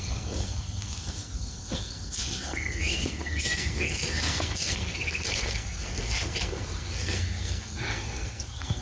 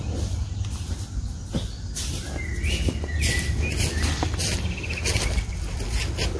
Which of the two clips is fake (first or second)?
first